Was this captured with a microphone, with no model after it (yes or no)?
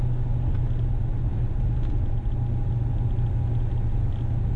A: yes